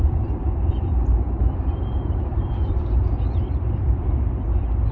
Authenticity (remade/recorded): remade